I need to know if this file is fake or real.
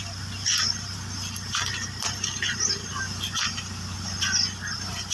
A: real